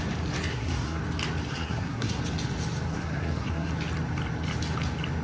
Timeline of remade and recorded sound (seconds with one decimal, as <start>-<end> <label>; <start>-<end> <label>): 0.0-0.5 recorded; 0.5-1.0 remade; 1.0-1.5 recorded; 1.5-2.2 remade; 2.2-2.9 recorded; 2.9-3.7 remade; 3.7-5.2 recorded